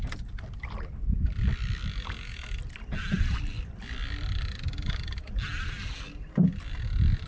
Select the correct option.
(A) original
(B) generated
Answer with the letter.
A